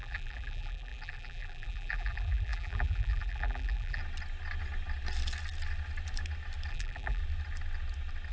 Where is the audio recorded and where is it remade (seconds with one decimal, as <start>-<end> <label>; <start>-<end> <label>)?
0.0-4.0 remade; 4.0-6.7 recorded; 6.7-7.2 remade; 7.2-8.3 recorded